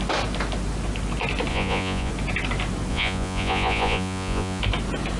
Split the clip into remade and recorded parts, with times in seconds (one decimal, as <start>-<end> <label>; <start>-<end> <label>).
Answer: 0.0-1.5 recorded; 1.5-2.1 remade; 2.1-2.9 recorded; 2.9-4.6 remade; 4.6-5.2 recorded